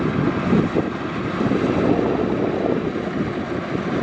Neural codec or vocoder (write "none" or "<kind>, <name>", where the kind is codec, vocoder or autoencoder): none